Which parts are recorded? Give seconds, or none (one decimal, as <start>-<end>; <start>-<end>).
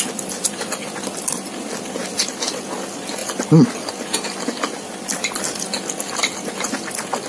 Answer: 0.0-7.3